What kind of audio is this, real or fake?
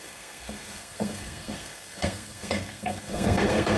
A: fake